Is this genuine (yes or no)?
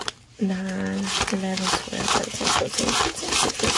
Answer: yes